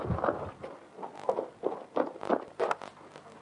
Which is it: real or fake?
real